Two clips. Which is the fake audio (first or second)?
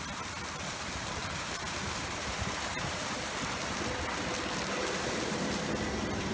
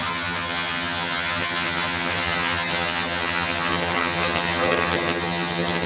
second